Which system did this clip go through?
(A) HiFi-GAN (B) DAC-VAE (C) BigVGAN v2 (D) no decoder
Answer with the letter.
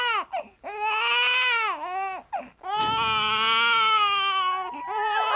D